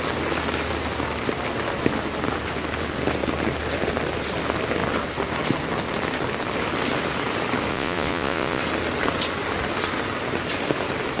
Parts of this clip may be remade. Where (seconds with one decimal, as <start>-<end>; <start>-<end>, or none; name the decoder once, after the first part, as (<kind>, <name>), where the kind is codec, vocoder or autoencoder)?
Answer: 7.7-8.6 (vocoder, Vocos)